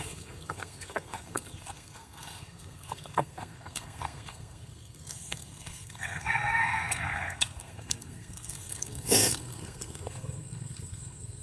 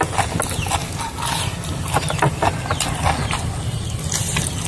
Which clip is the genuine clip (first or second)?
second